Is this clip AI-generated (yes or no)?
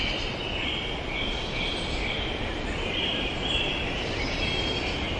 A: yes